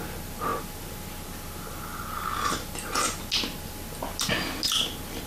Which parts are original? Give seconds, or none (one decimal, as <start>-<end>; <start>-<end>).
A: 0.0-5.3